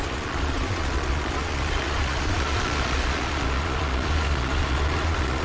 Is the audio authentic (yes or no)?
no